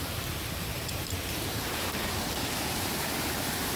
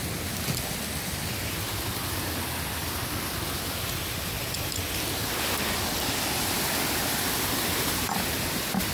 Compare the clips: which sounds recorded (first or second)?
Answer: second